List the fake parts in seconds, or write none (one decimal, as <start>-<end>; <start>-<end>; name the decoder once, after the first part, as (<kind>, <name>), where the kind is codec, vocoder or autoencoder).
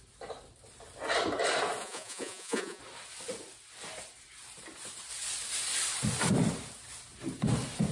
1.8-2.8 (vocoder, Vocos)